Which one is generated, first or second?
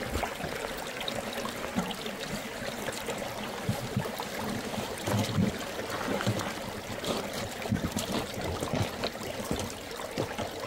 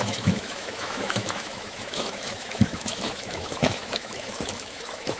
second